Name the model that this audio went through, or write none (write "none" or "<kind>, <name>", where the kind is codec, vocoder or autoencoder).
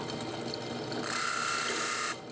none